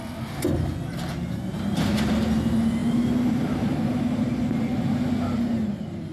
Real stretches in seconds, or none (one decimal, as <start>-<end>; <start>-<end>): 0.0-6.1